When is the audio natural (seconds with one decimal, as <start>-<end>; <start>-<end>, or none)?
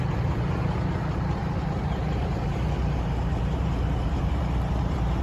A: none